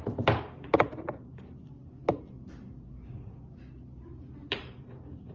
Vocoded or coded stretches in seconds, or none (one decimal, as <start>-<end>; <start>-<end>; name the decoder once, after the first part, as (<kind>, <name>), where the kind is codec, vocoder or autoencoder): 0.0-1.3 (vocoder, BigVGAN v2); 4.5-5.3

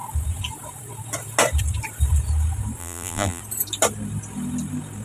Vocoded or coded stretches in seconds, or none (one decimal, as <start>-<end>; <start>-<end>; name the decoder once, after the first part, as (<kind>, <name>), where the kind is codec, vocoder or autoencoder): 2.8-3.4 (vocoder, BigVGAN v2)

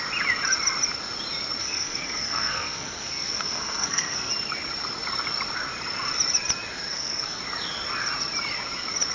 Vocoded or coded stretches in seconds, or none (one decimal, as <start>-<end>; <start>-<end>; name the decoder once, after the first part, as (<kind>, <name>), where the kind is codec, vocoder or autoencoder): 1.6-4.3 (codec, SNAC); 6.9-7.4

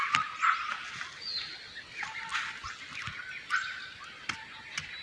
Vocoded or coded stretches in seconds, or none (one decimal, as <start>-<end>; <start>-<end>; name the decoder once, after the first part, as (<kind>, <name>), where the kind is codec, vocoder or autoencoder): none